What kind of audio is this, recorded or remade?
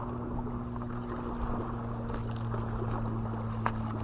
recorded